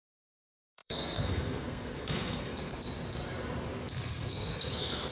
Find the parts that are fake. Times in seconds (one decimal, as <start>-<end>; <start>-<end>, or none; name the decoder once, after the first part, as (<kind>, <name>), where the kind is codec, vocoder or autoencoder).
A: 0.0-2.8 (codec, SNAC); 3.8-5.1